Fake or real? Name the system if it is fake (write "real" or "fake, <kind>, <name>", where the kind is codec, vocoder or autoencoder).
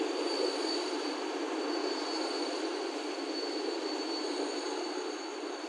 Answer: real